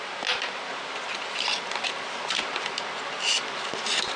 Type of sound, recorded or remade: recorded